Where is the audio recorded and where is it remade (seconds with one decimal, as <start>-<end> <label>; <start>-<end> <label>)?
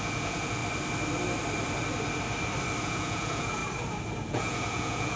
0.0-0.6 remade; 0.6-2.8 recorded; 2.8-3.6 remade; 3.6-4.3 recorded; 4.3-5.2 remade